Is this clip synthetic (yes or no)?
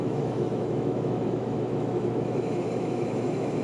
yes